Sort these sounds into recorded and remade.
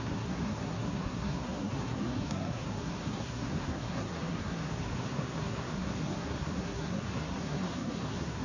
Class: remade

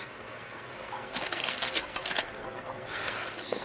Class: remade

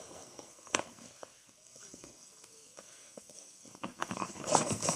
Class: remade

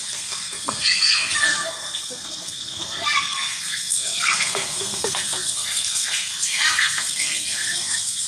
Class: remade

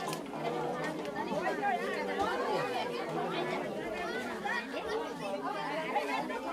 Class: recorded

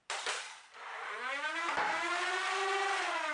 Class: recorded